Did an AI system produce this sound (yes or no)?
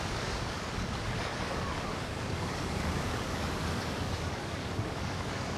yes